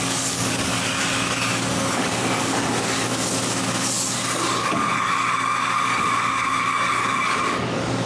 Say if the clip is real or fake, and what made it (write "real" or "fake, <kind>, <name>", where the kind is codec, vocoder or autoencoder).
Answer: fake, codec, DAC